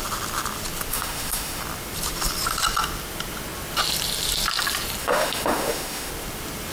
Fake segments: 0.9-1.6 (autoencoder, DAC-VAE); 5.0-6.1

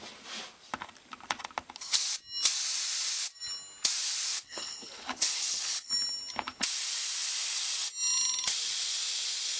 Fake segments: 4.3-5.9 (codec, HILCodec)

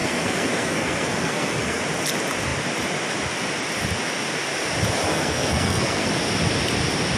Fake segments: 0.0-1.8 (codec, SNAC); 5.1-6.1

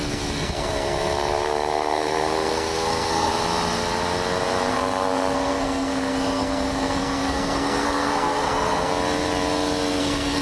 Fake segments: 0.0-3.3 (codec, SNAC); 4.7-8.9; 10.0-10.4